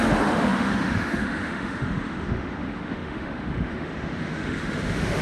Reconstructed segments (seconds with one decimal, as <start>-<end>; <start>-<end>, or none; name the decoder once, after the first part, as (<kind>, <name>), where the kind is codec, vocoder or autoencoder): 0.0-5.2 (autoencoder, DAC-VAE)